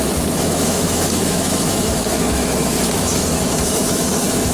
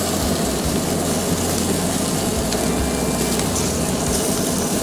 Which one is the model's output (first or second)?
first